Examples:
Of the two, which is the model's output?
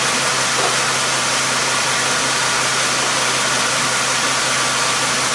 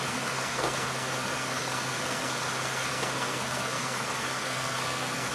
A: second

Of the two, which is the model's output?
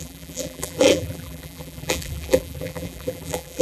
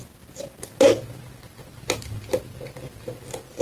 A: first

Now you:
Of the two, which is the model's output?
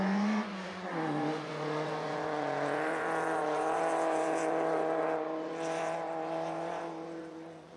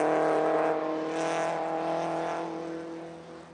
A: first